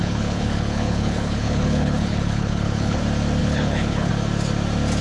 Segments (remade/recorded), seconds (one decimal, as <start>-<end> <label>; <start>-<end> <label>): 0.0-3.0 remade; 3.0-3.4 recorded; 3.4-4.1 remade; 4.1-5.0 recorded